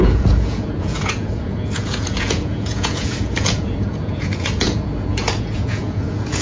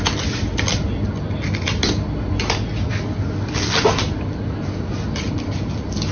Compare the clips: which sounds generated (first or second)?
first